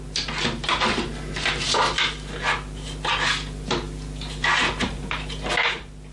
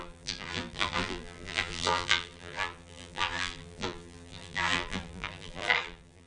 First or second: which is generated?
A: second